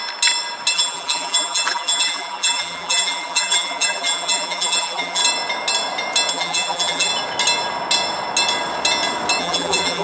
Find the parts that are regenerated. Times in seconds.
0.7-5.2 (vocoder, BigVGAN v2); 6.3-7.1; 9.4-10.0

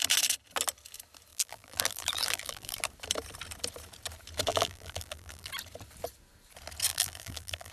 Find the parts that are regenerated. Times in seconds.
1.3-2.8 (vocoder, BigVGAN v2); 4.5-5.5; 6.9-7.7

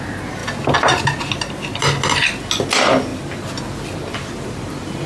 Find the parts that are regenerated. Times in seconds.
none

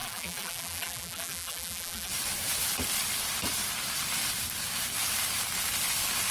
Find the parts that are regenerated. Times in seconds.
0.0-2.1 (vocoder, BigVGAN v2)